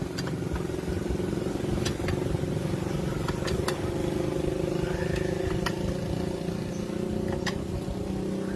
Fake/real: real